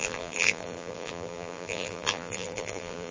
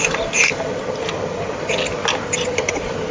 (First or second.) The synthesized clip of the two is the first